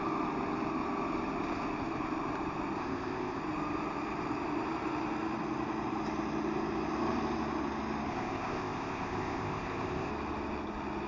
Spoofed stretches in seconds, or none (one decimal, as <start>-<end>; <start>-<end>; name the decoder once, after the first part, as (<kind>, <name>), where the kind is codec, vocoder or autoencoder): 2.8-3.4 (codec, ZipCodec); 8.1-10.1